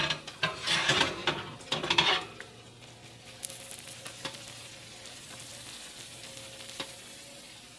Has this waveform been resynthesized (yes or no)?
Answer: no